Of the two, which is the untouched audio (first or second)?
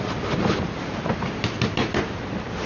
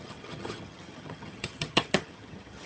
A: first